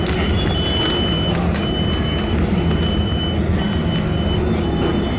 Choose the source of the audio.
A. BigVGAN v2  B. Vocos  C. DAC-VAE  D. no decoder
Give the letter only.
D